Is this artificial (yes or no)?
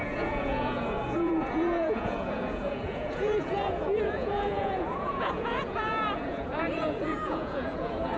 yes